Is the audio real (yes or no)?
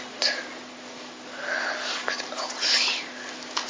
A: yes